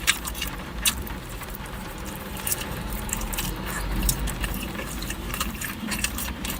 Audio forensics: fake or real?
fake